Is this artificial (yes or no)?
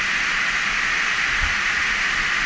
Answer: no